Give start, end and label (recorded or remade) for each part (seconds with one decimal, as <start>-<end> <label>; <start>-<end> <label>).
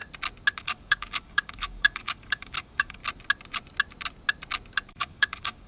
0.0-0.6 recorded; 0.6-3.0 remade; 3.0-4.9 recorded; 4.9-5.7 remade